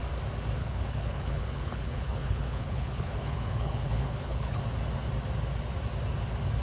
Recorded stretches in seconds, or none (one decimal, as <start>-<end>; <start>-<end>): 0.0-0.6; 4.6-6.6